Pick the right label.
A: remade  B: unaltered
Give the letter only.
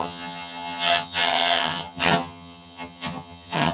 A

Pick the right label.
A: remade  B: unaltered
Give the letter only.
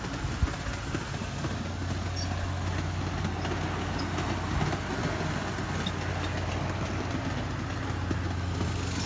B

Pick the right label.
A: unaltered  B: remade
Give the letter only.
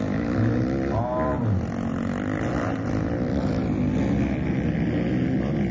A